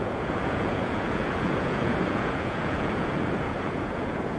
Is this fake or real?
fake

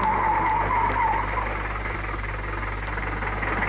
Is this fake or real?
real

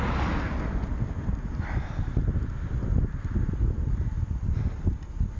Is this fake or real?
real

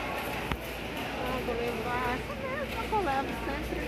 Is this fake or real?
real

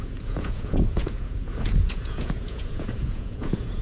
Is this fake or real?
fake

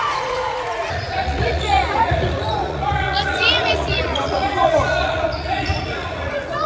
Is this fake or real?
fake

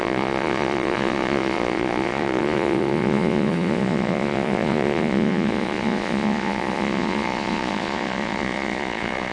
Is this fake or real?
fake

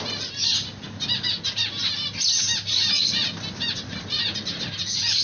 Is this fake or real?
real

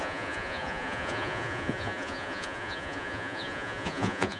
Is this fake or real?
fake